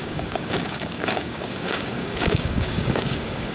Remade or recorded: remade